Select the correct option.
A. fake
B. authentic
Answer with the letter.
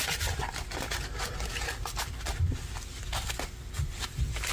B